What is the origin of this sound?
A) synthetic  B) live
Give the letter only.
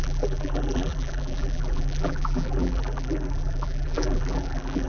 A